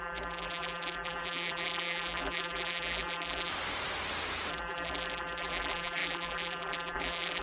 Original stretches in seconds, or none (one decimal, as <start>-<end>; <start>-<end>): 3.5-4.5